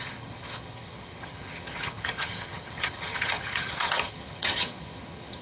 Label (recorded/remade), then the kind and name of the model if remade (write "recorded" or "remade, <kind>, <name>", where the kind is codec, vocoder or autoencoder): remade, vocoder, HiFi-GAN